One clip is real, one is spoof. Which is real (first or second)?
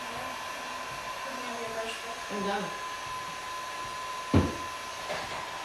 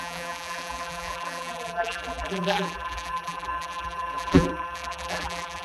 first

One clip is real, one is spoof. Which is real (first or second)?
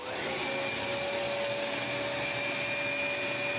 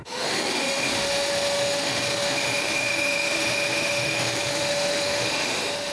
first